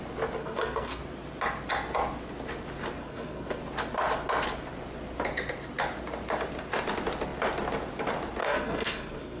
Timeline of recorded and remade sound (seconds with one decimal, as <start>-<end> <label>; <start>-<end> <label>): 0.0-0.4 recorded; 0.4-1.0 remade; 1.0-3.0 recorded; 3.0-3.6 remade; 3.6-8.4 recorded; 8.4-9.4 remade